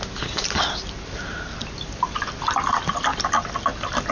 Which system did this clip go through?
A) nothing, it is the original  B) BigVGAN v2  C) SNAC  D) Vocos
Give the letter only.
A